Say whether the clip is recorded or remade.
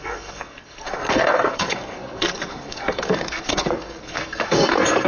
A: remade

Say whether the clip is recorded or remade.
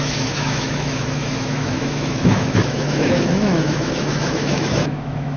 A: remade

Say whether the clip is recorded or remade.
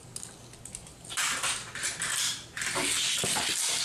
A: recorded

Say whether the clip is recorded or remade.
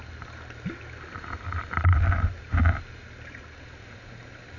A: recorded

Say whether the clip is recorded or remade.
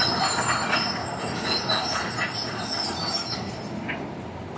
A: recorded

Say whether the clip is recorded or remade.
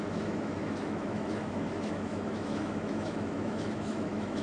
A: remade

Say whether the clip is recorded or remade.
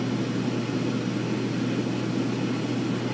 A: recorded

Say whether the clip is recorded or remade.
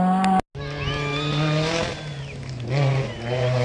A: recorded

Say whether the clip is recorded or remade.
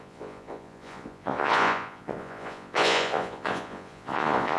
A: remade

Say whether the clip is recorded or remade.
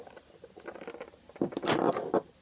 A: recorded